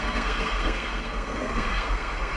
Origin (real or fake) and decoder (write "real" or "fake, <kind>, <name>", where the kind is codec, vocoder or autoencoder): fake, codec, SNAC